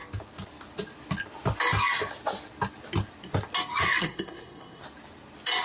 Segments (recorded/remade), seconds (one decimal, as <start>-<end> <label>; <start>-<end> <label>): 0.0-4.0 recorded; 4.0-4.8 remade; 4.8-5.6 recorded